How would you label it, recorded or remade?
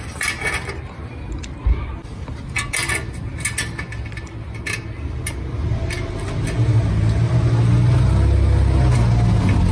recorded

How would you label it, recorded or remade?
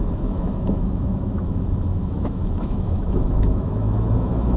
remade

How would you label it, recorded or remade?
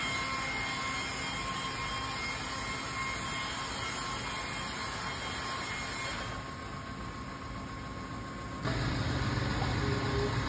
recorded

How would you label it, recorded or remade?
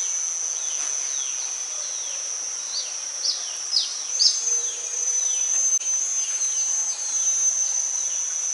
recorded